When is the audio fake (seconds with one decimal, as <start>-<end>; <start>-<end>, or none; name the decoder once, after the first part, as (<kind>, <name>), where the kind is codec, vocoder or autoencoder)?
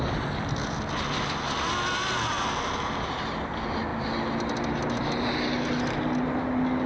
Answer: none